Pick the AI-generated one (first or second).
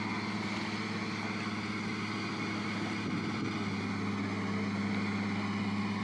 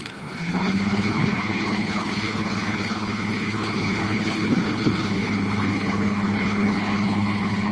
second